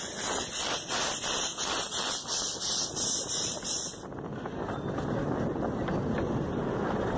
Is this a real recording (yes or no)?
yes